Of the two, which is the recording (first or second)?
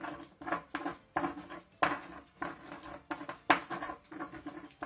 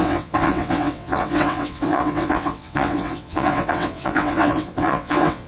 first